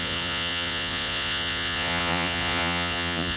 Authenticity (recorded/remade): remade